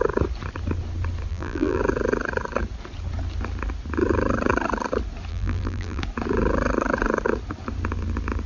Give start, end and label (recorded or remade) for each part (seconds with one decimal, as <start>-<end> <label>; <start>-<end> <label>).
0.0-1.3 recorded; 1.3-1.8 remade; 1.8-5.3 recorded; 5.3-6.0 remade; 6.0-8.5 recorded